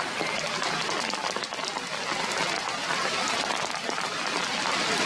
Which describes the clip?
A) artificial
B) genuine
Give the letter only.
B